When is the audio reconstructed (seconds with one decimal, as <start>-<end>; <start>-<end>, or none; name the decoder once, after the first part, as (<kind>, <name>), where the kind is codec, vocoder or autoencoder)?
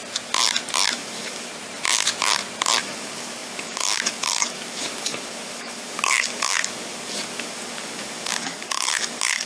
0.9-1.5 (codec, DAC); 2.8-9.5